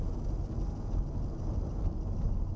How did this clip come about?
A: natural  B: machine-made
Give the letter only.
A